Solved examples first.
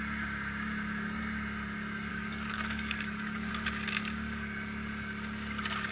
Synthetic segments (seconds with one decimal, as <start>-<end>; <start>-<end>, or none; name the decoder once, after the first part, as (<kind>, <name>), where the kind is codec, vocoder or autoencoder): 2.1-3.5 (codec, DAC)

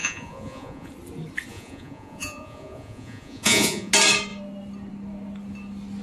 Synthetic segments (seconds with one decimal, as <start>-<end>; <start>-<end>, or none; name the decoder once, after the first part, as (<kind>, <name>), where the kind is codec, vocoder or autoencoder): 0.0-0.9 (vocoder, Vocos); 1.5-3.9

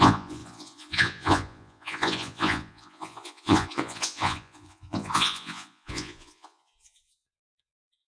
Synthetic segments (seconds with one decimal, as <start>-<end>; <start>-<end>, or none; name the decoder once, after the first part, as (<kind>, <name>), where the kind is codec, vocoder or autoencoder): 0.0-8.1 (vocoder, Vocos)

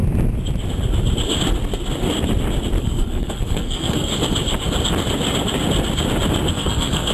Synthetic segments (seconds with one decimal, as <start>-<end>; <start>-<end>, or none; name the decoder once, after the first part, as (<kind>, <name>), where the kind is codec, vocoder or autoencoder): 2.8-4.1 (codec, SNAC); 6.5-7.1

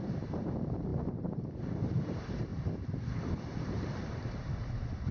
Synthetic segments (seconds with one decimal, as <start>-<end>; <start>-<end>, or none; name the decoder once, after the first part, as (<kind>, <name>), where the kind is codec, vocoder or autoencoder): 0.0-2.5 (vocoder, BigVGAN v2); 3.2-5.1

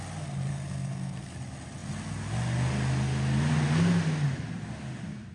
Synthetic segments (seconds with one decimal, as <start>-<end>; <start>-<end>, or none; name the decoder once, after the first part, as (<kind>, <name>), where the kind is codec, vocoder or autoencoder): 0.5-1.2 (codec, SNAC)